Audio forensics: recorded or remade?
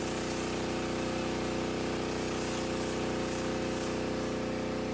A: recorded